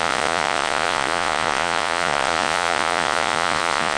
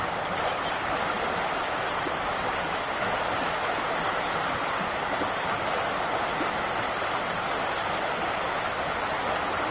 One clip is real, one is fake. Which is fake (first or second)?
first